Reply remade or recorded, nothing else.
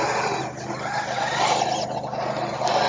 recorded